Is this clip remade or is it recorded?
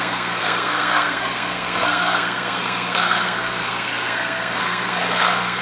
remade